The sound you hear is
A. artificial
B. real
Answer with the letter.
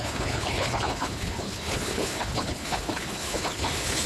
A